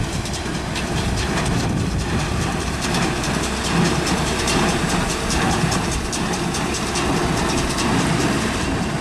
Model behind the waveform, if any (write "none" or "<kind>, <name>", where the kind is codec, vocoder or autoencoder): vocoder, BigVGAN v2